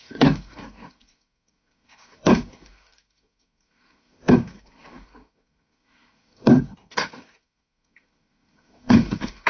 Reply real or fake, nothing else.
fake